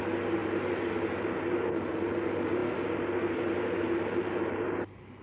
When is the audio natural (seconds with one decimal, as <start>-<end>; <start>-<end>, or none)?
0.0-5.2